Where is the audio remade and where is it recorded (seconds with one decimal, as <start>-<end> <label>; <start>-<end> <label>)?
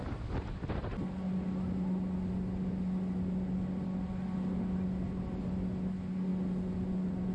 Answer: 0.0-7.3 recorded